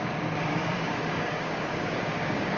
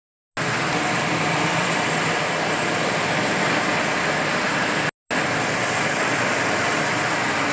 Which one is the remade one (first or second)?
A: first